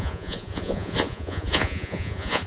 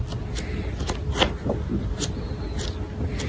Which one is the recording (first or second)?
second